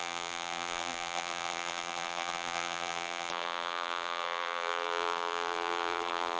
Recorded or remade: remade